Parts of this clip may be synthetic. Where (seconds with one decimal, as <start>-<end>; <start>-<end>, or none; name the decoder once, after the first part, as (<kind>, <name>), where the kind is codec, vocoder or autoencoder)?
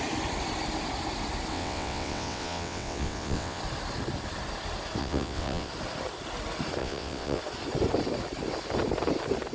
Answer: 1.5-3.6 (vocoder, WaveNeXt); 5.0-5.7; 6.8-7.4